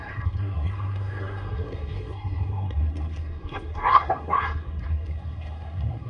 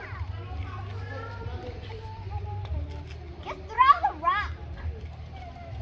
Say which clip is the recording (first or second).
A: second